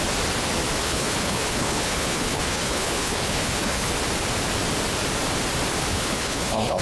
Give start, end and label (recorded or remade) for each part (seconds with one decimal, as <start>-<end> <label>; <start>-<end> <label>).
0.0-0.8 recorded; 0.8-3.9 remade; 3.9-5.9 recorded; 5.9-6.8 remade